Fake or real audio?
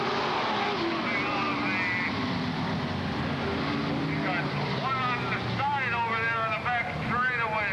real